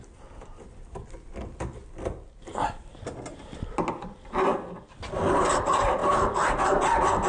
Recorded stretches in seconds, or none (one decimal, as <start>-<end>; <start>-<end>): 0.0-7.3